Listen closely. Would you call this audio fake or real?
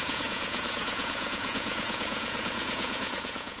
fake